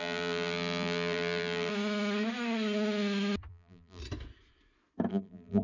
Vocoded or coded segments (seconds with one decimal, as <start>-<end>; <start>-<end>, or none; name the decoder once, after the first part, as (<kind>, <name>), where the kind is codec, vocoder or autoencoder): 0.0-1.7 (vocoder, BigVGAN v2); 3.5-4.0; 5.1-5.6